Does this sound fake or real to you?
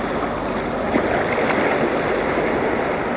real